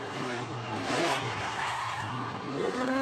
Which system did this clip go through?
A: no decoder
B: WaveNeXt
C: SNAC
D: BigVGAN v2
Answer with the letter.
C